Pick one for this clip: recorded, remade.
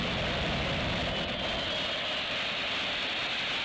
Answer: recorded